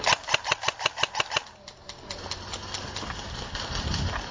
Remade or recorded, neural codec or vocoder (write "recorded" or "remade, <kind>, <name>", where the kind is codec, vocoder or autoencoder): recorded